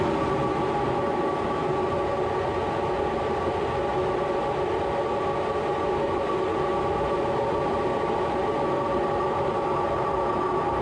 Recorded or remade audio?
recorded